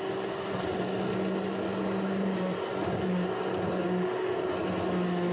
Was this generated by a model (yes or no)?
no